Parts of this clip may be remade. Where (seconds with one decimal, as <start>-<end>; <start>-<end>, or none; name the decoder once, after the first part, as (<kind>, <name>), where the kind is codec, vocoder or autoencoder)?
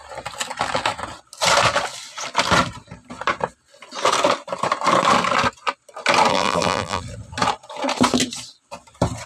6.3-7.0 (vocoder, BigVGAN v2)